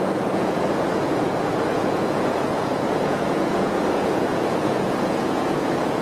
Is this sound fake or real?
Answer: fake